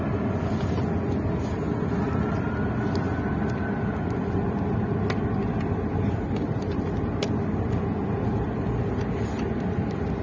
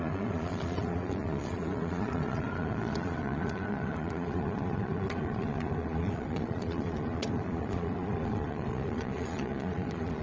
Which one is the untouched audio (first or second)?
first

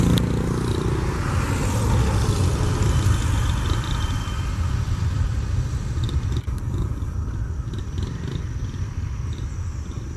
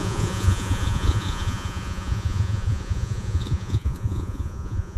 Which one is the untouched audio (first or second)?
first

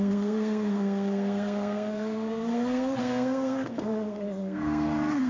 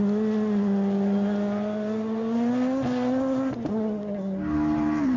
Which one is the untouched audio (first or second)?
second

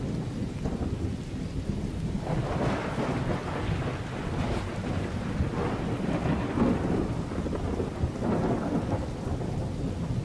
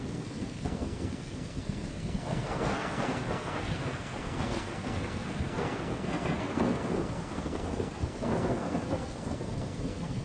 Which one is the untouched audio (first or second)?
first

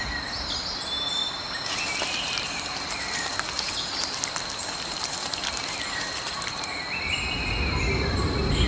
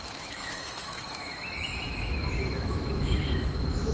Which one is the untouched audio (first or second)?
first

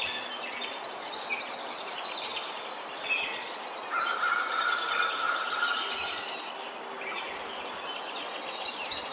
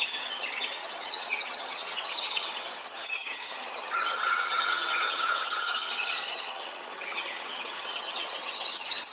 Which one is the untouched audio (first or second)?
first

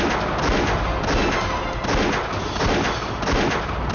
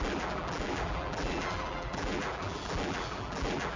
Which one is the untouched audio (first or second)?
first